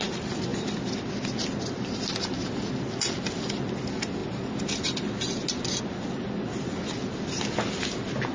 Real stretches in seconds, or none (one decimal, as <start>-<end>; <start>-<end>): 0.0-8.3